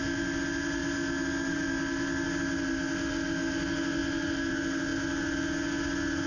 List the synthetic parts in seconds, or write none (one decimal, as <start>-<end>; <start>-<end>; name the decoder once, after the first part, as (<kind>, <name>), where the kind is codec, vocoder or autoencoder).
none